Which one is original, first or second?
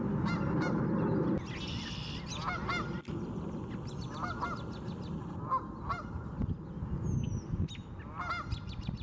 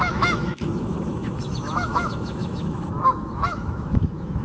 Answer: first